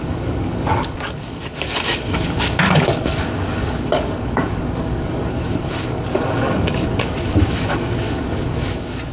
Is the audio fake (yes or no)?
yes